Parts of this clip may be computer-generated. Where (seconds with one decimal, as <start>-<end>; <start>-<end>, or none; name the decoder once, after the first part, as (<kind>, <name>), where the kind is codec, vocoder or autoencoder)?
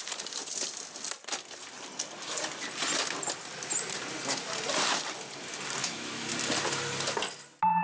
5.8-6.3 (autoencoder, DAC-VAE)